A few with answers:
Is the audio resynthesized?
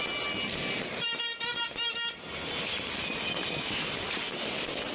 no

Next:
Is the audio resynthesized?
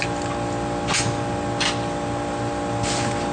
no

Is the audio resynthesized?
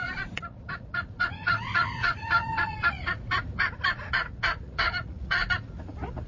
yes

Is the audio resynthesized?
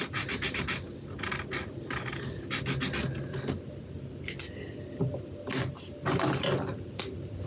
no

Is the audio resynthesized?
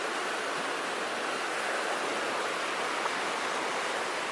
no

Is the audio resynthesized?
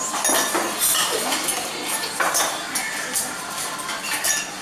no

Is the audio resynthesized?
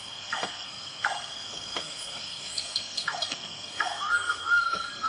yes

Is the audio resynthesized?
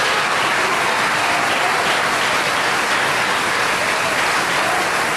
no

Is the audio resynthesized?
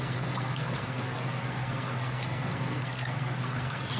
yes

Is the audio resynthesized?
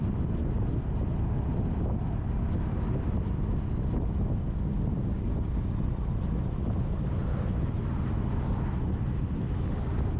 no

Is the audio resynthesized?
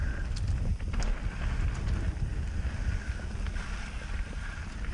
no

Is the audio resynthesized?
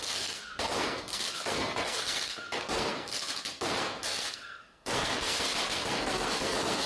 yes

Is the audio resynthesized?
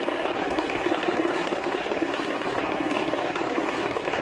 yes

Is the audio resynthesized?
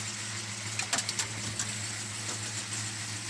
no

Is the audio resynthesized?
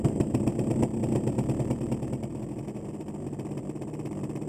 no